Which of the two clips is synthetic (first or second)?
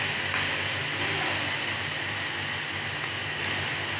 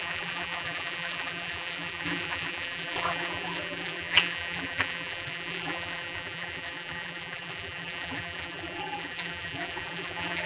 second